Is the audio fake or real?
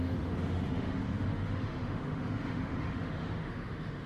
fake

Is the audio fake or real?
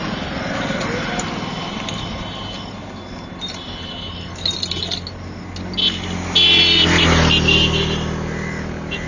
real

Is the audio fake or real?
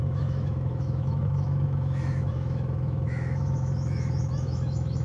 fake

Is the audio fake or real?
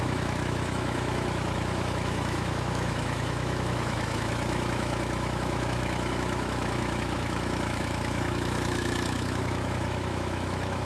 fake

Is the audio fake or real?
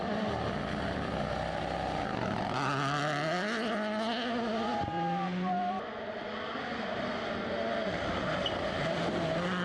real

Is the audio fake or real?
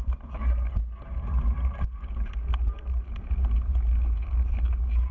real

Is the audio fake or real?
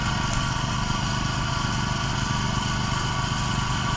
real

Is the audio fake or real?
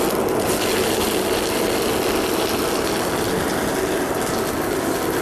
real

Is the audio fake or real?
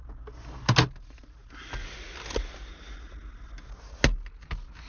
real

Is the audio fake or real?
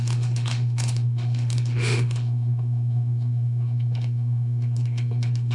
fake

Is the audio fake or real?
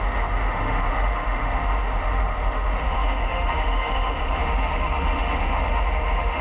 fake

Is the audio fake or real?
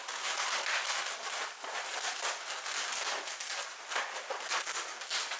real